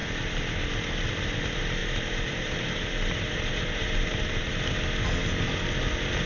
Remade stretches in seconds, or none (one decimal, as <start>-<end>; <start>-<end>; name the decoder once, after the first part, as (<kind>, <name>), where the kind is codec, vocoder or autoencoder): 1.8-4.5 (vocoder, BigVGAN v2)